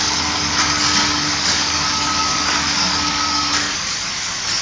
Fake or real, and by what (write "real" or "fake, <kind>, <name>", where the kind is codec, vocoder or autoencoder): fake, codec, DAC